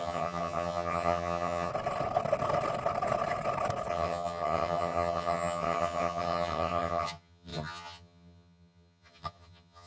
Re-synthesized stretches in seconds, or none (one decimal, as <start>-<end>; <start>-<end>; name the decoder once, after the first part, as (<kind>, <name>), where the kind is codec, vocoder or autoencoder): 0.0-1.7 (vocoder, HiFi-GAN); 3.9-9.9